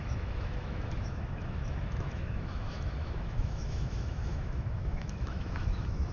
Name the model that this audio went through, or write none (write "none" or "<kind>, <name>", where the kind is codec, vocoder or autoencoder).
autoencoder, DAC-VAE